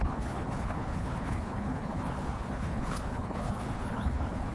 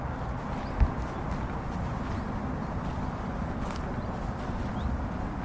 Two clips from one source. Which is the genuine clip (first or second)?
second